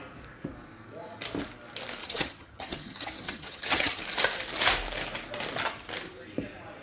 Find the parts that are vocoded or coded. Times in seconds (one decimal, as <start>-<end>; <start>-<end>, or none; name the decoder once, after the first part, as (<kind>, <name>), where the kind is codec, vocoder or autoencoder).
2.0-4.0 (vocoder, HiFi-GAN)